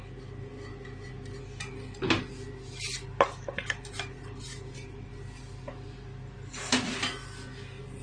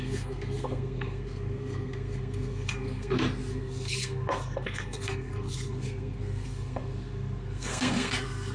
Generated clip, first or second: second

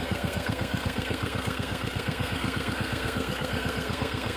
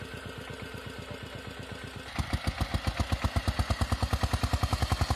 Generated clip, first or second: first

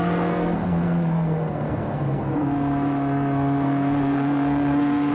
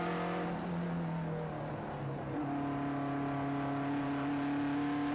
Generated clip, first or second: first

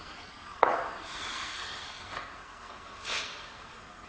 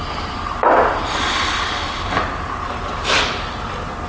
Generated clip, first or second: first